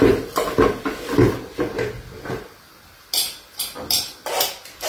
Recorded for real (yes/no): no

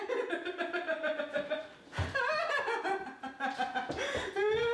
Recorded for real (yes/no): yes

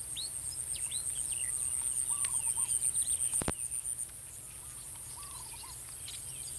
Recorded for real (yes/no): yes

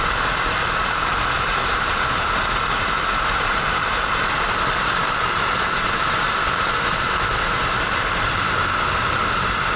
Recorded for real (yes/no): no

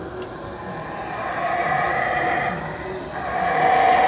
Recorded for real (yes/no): yes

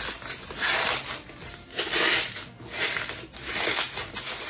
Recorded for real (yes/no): yes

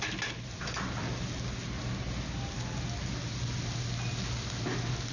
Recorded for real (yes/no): yes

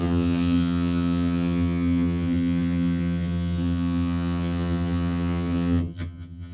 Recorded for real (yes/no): no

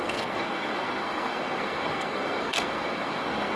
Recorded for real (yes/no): no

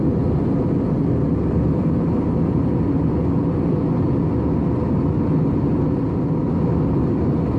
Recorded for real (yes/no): yes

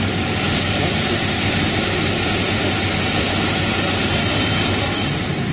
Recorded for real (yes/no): yes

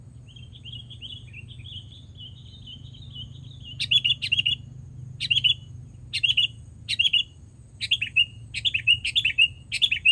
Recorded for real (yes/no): yes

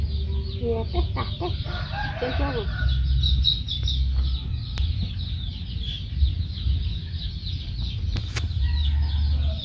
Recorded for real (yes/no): yes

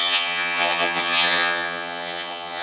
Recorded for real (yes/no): no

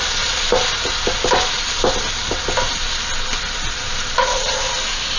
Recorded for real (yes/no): yes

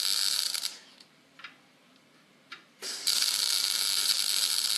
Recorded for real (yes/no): no